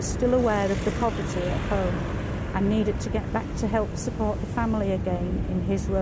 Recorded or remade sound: recorded